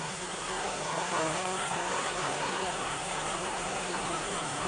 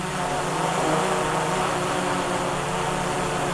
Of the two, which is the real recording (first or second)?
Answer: second